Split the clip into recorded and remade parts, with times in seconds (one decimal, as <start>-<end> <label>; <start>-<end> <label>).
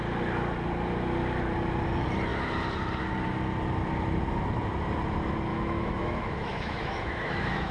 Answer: 0.0-5.5 recorded; 5.5-7.7 remade